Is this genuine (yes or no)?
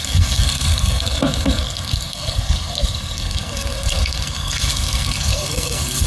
no